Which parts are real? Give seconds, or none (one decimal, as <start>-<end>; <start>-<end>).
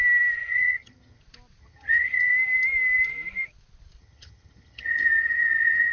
0.0-0.5; 1.2-1.6; 2.3-4.0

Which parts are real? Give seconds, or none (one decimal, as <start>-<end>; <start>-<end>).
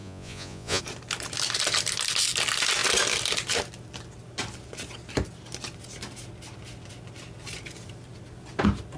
0.8-9.0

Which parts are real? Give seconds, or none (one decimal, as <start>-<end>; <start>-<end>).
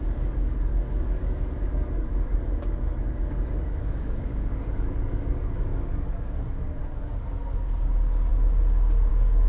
8.3-9.1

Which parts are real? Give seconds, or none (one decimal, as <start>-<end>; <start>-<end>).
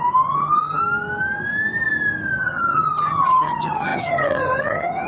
0.8-2.4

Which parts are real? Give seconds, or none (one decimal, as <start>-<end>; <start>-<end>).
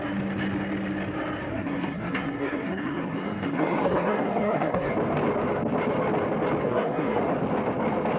0.0-1.5; 4.9-6.6; 7.2-8.2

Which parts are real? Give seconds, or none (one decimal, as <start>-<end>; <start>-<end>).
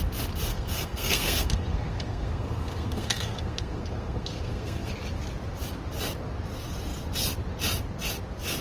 0.0-0.5; 4.9-8.6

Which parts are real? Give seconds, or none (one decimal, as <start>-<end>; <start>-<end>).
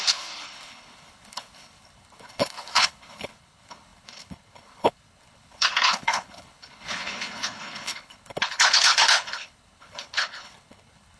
none